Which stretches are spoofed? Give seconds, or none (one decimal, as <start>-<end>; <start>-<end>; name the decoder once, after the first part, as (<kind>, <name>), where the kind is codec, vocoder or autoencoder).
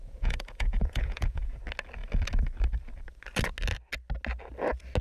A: 0.0-1.6 (vocoder, Vocos)